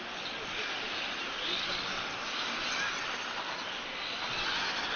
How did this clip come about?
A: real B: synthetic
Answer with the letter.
A